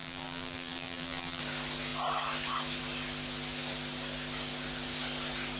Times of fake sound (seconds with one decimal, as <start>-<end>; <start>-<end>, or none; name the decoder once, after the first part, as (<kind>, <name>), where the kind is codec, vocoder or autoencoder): 0.0-1.4 (vocoder, BigVGAN v2)